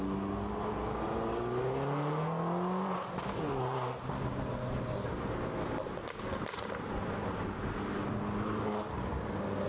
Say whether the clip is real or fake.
real